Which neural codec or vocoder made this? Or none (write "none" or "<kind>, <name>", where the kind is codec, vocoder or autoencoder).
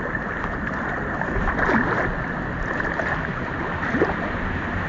none